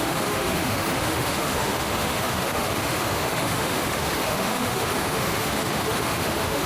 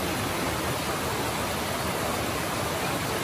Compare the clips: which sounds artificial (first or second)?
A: first